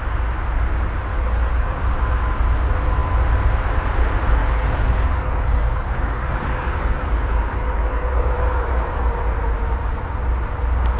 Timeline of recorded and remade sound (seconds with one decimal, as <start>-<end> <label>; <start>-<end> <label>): 0.0-1.1 recorded; 1.1-1.8 remade; 1.8-4.4 recorded; 4.4-9.1 remade; 9.1-11.0 recorded